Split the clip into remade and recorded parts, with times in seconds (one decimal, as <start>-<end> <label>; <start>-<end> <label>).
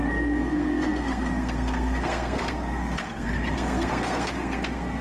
0.0-5.0 remade